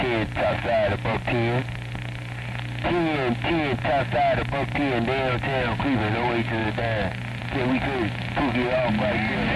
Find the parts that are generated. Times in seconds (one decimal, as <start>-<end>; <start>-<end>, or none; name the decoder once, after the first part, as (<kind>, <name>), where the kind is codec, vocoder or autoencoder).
none